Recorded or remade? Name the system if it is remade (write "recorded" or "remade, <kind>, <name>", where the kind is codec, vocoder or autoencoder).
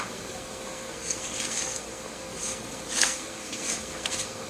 remade, codec, SNAC